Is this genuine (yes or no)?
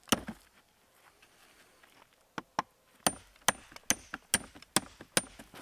yes